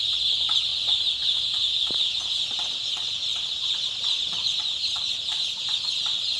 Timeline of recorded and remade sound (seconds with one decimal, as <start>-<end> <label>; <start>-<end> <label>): 0.0-6.4 recorded